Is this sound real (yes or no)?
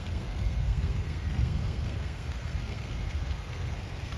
no